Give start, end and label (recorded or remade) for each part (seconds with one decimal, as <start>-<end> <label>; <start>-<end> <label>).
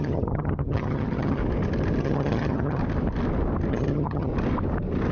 0.0-1.4 remade; 1.4-2.0 recorded; 2.0-2.8 remade; 2.8-3.7 recorded; 3.7-4.3 remade; 4.3-5.1 recorded